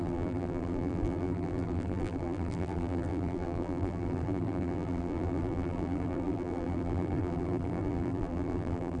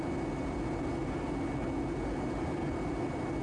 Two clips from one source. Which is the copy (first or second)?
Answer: first